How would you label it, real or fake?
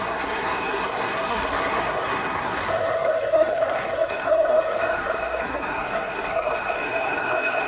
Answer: fake